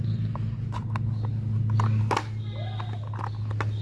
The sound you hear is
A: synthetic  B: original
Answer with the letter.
B